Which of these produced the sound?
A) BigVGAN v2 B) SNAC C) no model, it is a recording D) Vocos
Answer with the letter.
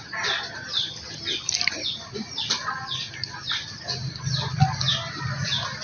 C